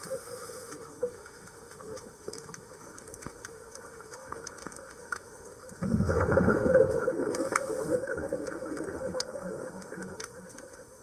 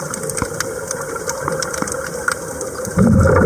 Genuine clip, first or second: second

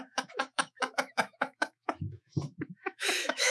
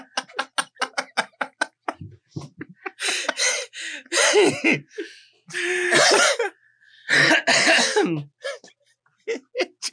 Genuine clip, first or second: second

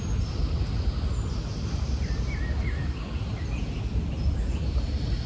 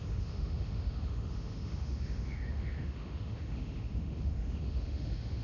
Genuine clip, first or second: first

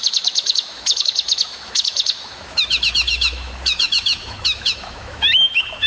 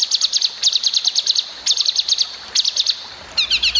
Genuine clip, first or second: second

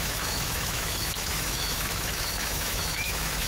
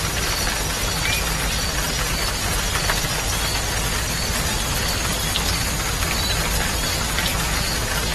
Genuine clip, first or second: second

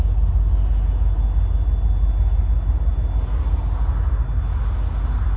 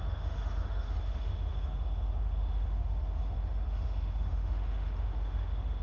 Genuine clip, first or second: first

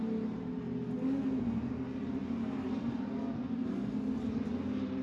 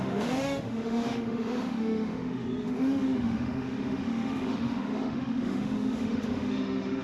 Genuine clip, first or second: first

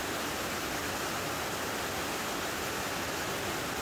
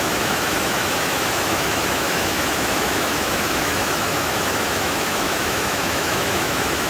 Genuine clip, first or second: first